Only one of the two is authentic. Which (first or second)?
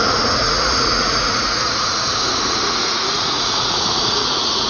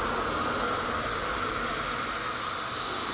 second